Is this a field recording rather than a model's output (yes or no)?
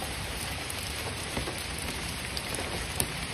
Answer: no